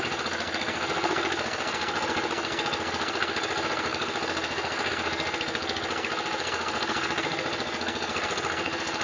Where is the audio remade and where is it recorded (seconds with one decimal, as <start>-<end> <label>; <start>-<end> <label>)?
0.0-9.0 remade